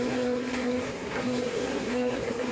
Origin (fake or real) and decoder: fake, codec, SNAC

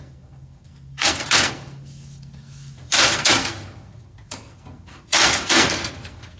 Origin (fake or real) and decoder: fake, codec, SNAC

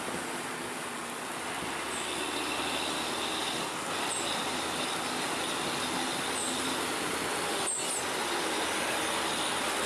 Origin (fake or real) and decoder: real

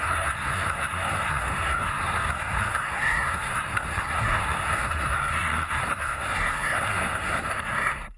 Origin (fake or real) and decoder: fake, codec, SNAC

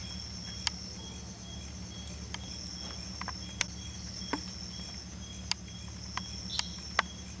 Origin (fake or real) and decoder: real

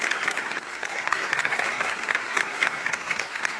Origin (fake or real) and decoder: fake, codec, SNAC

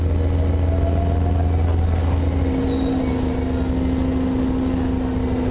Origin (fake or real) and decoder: real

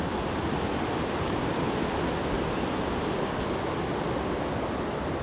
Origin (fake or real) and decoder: real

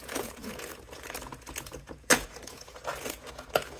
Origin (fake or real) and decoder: fake, vocoder, Vocos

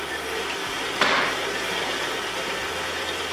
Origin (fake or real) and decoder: fake, vocoder, BigVGAN v2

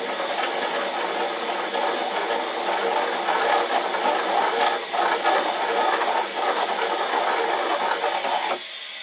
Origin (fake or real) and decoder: real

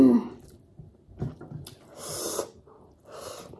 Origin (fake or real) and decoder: real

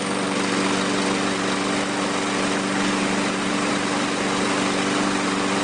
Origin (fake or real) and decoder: real